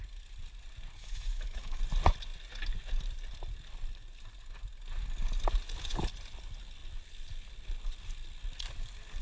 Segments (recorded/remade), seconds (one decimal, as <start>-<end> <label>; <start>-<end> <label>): 0.0-1.0 recorded; 1.0-1.8 remade; 1.8-9.2 recorded